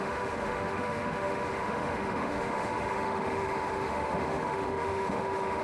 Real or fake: fake